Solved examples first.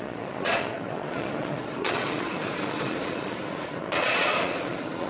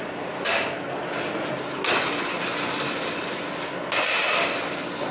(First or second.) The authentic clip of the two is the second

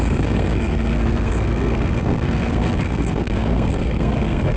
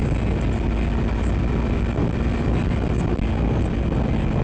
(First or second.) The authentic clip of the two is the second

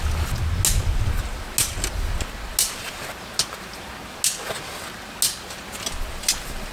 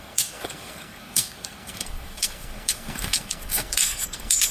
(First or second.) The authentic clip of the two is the first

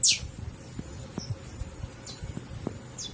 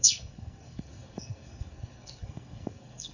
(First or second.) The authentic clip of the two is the first